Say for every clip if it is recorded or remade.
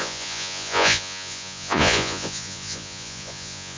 remade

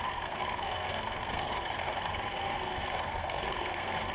remade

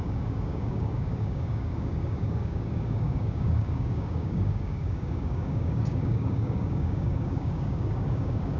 remade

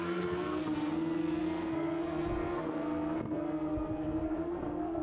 remade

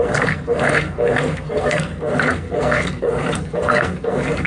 remade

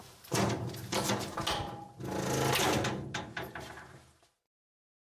recorded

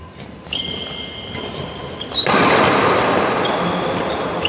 recorded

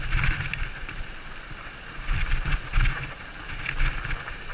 recorded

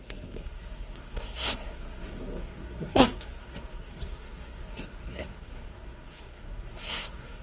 remade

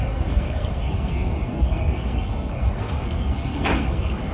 remade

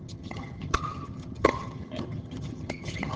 remade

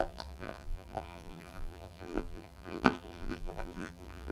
remade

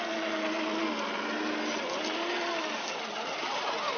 recorded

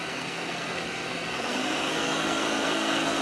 remade